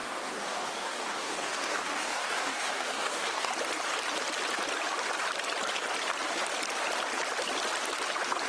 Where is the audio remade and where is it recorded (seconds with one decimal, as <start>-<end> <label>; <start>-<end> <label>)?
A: 0.0-3.5 remade; 3.5-8.5 recorded